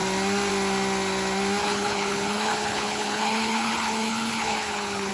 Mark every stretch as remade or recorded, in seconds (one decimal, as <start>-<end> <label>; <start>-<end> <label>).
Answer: 0.0-1.6 recorded; 1.6-5.1 remade